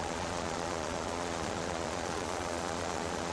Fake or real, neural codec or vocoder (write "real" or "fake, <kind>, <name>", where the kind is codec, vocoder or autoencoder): fake, vocoder, Vocos